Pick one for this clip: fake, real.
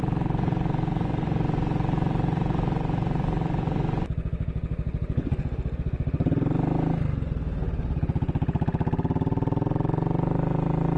real